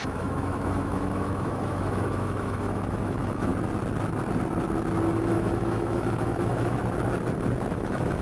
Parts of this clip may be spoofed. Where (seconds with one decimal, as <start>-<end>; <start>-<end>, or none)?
0.0-3.5; 5.2-6.8; 7.7-8.2